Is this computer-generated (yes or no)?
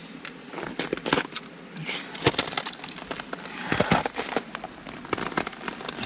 no